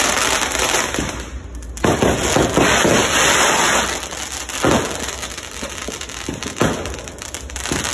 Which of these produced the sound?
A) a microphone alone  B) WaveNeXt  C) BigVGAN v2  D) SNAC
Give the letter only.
A